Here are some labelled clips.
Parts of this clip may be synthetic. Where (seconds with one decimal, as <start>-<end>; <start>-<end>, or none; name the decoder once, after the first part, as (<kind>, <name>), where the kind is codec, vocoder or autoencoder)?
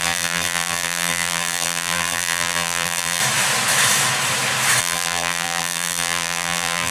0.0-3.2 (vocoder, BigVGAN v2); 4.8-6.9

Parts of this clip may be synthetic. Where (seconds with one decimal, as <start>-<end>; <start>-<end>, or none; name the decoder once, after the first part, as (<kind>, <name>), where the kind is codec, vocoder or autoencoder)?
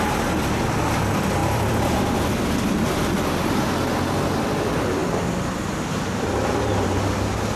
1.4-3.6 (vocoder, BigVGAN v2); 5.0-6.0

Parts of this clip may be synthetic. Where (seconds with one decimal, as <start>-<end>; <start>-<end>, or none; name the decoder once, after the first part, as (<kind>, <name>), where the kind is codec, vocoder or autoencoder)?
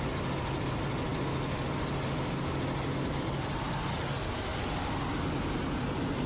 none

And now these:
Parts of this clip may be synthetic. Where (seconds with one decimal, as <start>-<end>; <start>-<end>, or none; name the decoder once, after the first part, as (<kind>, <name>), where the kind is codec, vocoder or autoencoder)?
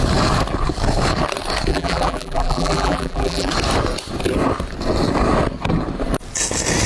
1.7-3.5 (vocoder, BigVGAN v2)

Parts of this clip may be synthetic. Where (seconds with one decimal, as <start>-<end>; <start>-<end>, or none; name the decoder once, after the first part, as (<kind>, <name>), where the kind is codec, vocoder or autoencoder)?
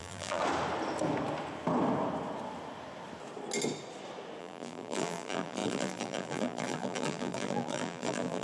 0.0-0.4 (vocoder, BigVGAN v2); 4.4-8.4